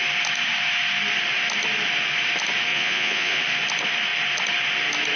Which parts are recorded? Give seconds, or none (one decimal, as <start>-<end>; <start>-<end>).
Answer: 0.0-2.7; 3.4-5.2